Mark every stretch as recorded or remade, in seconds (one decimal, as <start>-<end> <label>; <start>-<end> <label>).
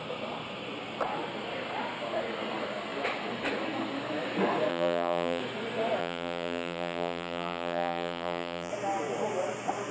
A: 0.0-4.7 recorded; 4.7-5.4 remade; 5.4-6.0 recorded; 6.0-8.7 remade; 8.7-9.9 recorded